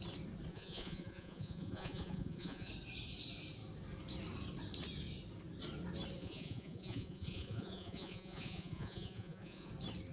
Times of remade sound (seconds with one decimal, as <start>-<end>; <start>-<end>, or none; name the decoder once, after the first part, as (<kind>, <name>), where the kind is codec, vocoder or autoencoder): 0.5-2.7 (vocoder, Vocos); 6.2-9.7